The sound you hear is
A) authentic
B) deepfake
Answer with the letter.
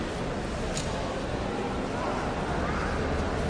A